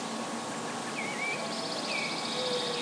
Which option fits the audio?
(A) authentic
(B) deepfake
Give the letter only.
A